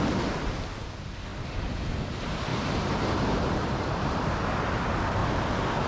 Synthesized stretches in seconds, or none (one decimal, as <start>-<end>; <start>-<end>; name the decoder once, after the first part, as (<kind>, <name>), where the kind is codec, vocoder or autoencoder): 2.5-4.3 (vocoder, BigVGAN v2); 5.2-5.9